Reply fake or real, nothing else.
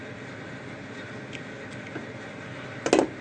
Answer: real